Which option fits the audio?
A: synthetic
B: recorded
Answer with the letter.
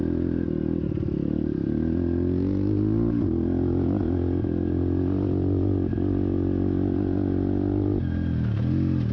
B